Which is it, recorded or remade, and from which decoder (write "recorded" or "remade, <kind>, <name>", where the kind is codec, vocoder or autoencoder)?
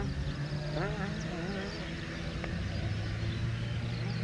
recorded